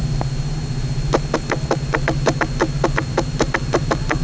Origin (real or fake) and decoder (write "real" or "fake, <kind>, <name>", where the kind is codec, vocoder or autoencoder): real